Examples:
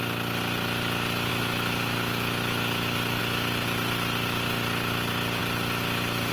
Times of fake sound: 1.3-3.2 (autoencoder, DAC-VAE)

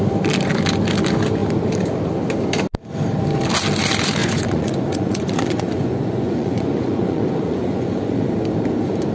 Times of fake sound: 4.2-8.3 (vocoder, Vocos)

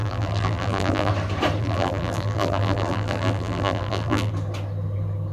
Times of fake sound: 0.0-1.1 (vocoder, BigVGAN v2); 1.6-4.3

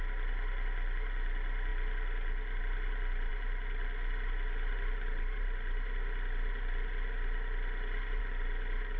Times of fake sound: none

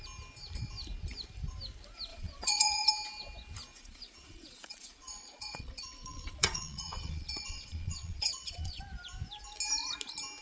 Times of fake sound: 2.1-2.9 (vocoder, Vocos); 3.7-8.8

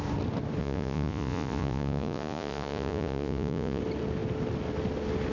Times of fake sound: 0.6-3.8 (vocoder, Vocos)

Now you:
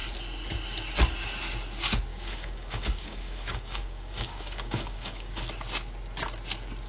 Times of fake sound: 2.1-5.4 (codec, DAC)